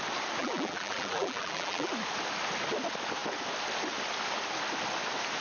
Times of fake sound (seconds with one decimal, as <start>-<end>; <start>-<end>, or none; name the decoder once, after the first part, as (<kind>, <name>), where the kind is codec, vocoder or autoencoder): 0.4-1.9 (vocoder, BigVGAN v2)